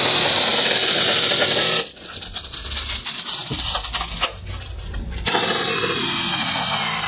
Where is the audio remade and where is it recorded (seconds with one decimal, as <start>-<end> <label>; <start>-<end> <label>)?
0.0-0.5 remade; 0.5-1.8 recorded; 1.8-5.8 remade; 5.8-7.1 recorded